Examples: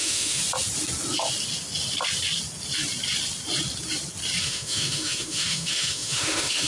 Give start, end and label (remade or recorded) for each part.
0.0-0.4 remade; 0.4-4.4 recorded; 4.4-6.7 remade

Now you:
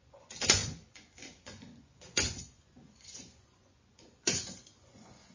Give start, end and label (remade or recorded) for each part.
0.0-5.3 remade

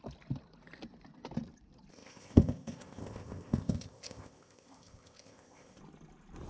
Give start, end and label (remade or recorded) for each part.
0.0-1.9 recorded; 1.9-5.8 remade; 5.8-6.5 recorded

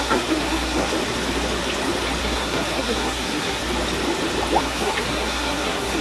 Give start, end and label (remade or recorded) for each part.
0.0-0.9 remade; 0.9-2.2 recorded; 2.2-3.6 remade; 3.6-4.6 recorded; 4.6-6.0 remade

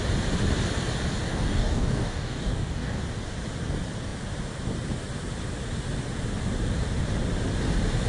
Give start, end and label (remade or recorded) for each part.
0.0-1.3 recorded; 1.3-3.0 remade; 3.0-8.1 recorded

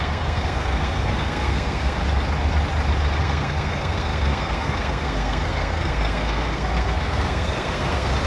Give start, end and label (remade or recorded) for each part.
0.0-2.0 remade; 2.0-3.2 recorded; 3.2-8.3 remade